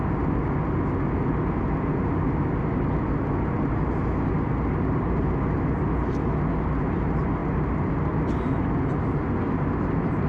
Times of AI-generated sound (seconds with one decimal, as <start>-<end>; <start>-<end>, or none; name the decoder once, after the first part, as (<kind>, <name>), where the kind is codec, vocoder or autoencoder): none